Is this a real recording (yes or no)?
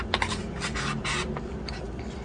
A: yes